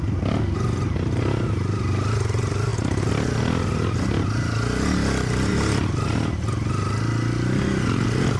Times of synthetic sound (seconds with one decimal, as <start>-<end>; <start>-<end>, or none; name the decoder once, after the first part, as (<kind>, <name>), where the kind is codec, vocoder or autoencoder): none